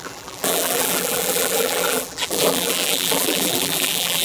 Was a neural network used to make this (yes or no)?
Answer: yes